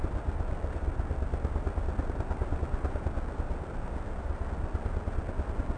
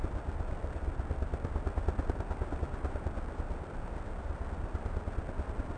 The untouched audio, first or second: first